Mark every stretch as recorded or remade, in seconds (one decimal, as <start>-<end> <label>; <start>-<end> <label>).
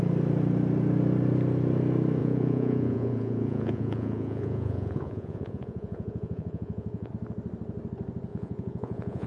0.0-2.2 recorded; 2.2-7.1 remade; 7.1-8.3 recorded; 8.3-9.3 remade